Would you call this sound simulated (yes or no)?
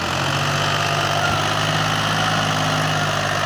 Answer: no